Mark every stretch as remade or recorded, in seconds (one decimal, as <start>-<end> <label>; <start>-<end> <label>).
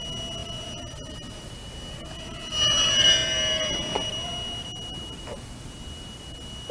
0.0-0.4 recorded; 0.4-1.7 remade; 1.7-6.7 recorded